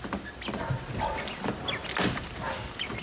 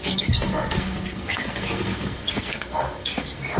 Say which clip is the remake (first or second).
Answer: second